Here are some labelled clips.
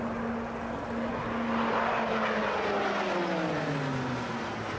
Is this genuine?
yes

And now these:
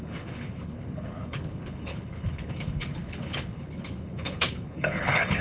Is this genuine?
no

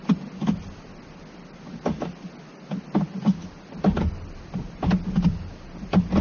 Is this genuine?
yes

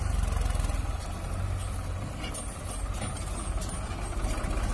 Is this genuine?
yes